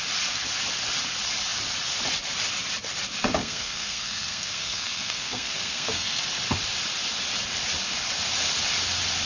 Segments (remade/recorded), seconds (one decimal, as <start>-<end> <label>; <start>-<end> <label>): 0.0-3.4 recorded; 3.4-6.2 remade; 6.2-9.3 recorded